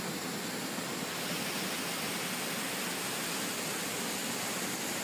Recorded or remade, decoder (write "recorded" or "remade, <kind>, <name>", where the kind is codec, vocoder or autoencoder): recorded